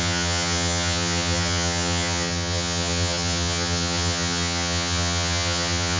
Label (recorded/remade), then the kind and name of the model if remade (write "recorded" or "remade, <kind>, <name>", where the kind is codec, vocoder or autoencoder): remade, vocoder, HiFi-GAN